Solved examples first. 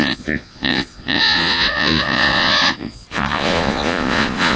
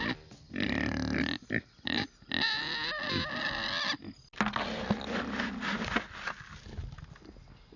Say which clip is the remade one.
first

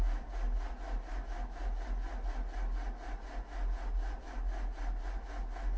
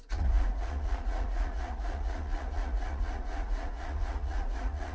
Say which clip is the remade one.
second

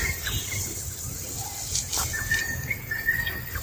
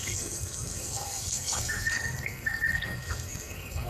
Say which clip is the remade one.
second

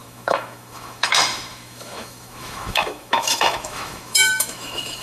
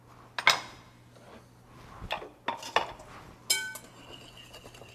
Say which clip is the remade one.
first